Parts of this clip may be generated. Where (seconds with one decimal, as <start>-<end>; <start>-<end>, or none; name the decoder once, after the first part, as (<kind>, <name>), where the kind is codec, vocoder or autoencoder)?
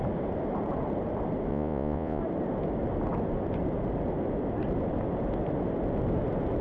1.5-2.2 (vocoder, Vocos)